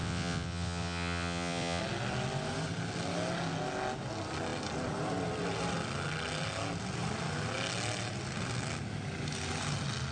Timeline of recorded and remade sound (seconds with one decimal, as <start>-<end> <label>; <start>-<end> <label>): 0.0-1.8 remade; 1.8-10.1 recorded